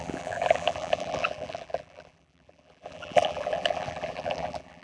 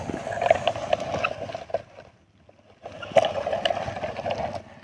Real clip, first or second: second